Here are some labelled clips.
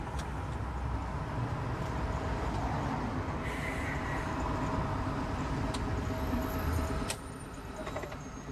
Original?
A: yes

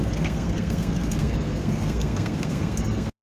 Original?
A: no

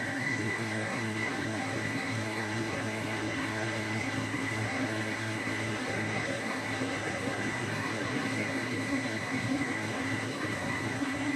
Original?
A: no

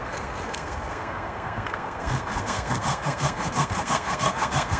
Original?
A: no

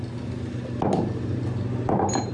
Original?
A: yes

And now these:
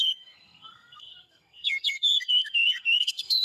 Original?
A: no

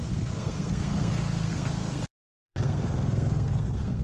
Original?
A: no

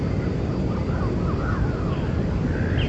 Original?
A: yes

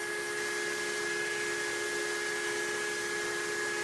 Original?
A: yes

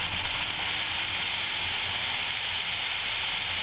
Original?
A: yes